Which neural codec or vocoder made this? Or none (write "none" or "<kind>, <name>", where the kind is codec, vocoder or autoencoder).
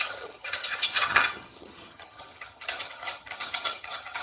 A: vocoder, HiFi-GAN